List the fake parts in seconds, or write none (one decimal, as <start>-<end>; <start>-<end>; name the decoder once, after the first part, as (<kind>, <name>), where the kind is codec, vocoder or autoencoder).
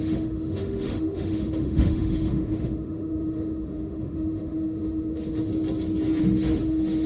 0.0-5.5 (autoencoder, DAC-VAE); 6.2-7.1